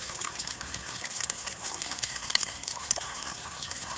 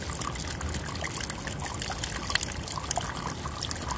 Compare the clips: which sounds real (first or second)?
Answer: second